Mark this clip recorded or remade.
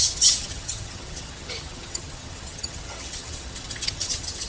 remade